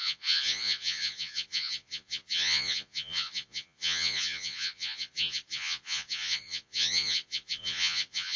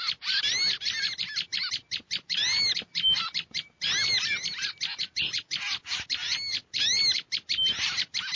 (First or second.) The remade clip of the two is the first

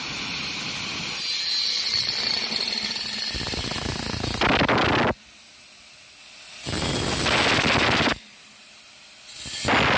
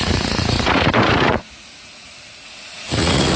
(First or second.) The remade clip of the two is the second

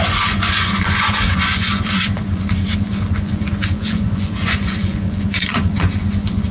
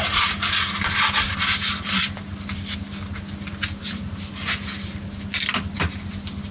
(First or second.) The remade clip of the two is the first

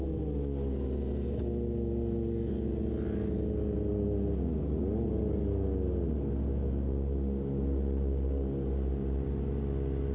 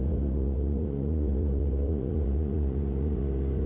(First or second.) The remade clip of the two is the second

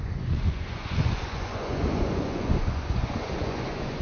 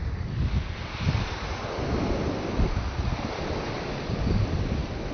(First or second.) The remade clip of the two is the first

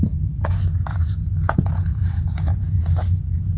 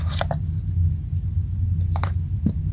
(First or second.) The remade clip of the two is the first